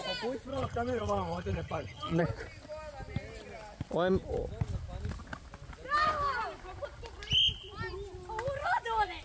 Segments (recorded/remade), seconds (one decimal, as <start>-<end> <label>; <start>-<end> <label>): 0.0-0.5 recorded; 0.5-2.2 remade; 2.2-9.2 recorded